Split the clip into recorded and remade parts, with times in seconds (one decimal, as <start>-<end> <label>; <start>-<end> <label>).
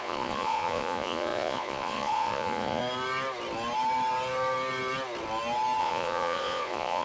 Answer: 0.0-2.8 remade; 2.8-5.8 recorded; 5.8-7.0 remade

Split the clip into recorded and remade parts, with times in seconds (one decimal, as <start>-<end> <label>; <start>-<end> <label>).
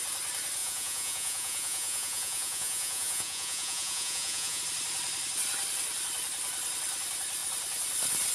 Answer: 0.0-0.6 recorded; 0.6-4.6 remade; 4.6-8.3 recorded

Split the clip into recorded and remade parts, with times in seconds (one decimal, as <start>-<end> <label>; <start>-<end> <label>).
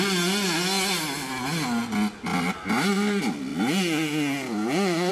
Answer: 0.0-5.1 recorded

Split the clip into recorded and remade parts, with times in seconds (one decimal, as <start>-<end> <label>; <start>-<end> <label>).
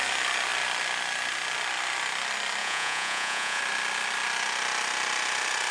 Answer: 0.0-2.6 recorded; 2.6-3.6 remade; 3.6-5.7 recorded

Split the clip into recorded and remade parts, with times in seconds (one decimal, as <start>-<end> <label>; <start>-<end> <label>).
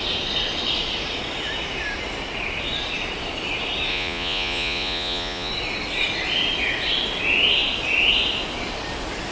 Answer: 0.0-3.9 recorded; 3.9-5.5 remade; 5.5-9.3 recorded